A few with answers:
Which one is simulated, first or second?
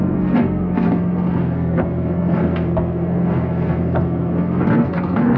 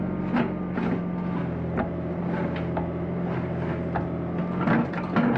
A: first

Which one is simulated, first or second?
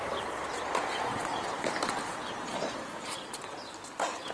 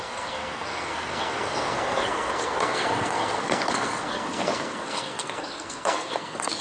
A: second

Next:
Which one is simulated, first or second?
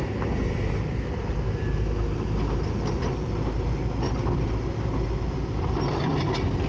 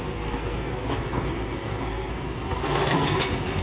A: second